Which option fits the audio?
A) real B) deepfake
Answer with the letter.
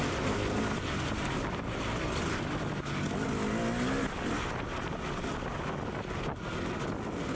A